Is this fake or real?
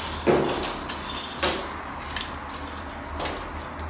real